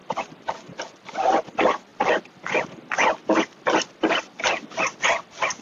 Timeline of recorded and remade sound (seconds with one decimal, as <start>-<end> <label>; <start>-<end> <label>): 0.0-5.6 recorded